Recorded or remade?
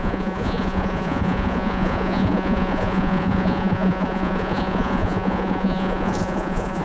remade